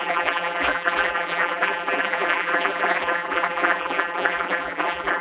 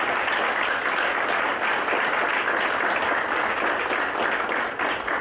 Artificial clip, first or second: first